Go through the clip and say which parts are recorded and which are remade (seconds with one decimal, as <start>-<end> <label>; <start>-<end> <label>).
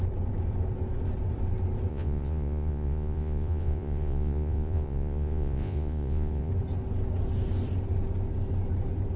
0.0-1.9 recorded; 1.9-6.5 remade; 6.5-9.2 recorded